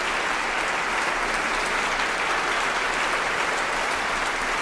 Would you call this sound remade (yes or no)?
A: no